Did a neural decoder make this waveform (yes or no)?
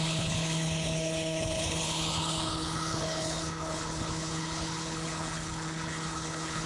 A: yes